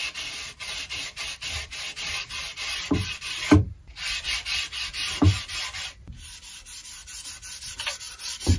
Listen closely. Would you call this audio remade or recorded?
remade